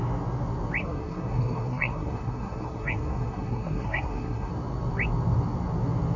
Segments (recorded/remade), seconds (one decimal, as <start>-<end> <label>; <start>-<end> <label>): 0.0-0.8 recorded; 0.8-4.5 remade; 4.5-6.2 recorded